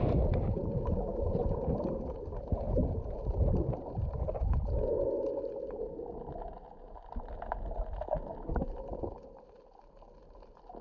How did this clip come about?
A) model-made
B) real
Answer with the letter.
B